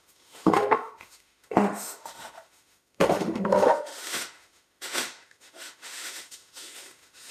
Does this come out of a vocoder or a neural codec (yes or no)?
yes